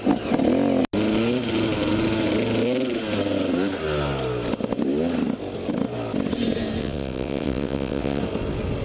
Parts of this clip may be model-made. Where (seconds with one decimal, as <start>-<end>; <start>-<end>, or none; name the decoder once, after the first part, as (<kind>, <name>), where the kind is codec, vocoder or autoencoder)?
6.8-8.2 (vocoder, WaveNeXt)